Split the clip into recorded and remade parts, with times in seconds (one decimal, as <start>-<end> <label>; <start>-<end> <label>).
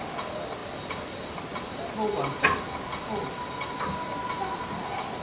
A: 0.0-5.2 recorded